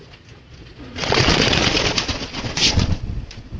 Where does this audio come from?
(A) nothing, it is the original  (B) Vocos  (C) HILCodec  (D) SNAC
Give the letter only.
B